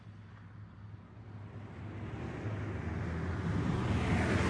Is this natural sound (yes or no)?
yes